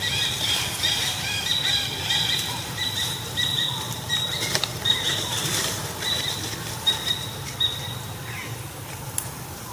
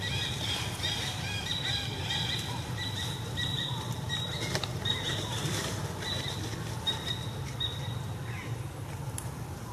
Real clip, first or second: second